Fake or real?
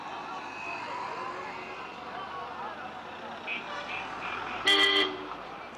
real